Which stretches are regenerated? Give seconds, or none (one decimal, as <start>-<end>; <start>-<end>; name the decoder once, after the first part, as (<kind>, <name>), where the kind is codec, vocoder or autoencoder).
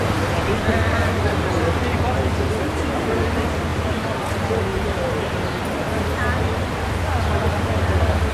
4.7-6.4 (vocoder, BigVGAN v2)